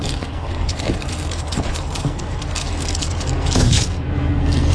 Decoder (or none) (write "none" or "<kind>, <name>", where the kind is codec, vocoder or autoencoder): codec, SNAC